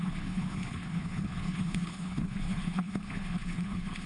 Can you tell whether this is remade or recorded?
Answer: remade